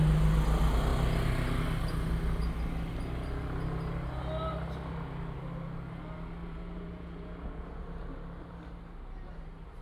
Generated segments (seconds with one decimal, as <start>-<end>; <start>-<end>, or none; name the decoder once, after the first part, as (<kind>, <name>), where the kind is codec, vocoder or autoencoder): 6.4-7.8 (vocoder, Vocos)